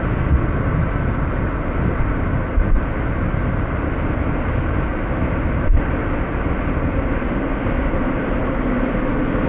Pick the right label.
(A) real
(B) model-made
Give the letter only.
A